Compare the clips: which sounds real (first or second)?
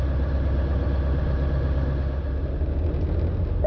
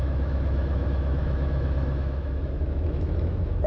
first